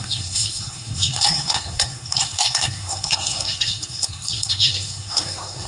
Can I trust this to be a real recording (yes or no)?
no